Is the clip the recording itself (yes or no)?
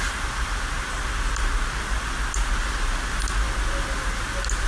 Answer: yes